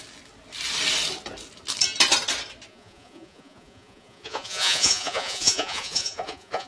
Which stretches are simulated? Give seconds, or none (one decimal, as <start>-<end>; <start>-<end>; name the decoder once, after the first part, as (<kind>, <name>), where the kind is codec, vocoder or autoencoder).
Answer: 2.7-6.7 (vocoder, Vocos)